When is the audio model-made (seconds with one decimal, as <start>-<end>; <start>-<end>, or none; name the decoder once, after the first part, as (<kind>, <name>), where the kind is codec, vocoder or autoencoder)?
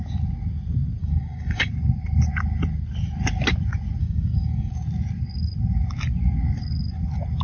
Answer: 1.0-1.7 (codec, DAC); 4.0-4.7